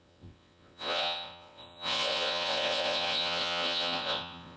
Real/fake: fake